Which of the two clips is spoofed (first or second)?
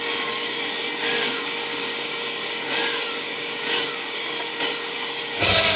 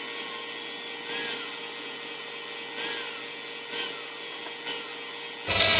first